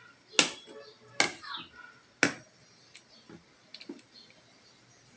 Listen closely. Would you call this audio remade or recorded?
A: recorded